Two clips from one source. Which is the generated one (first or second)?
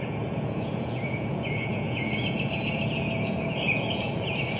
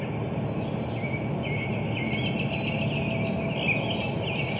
first